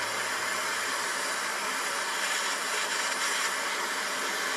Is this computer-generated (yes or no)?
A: no